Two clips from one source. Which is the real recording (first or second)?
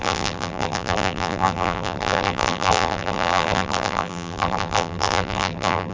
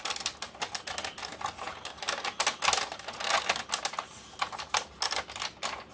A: second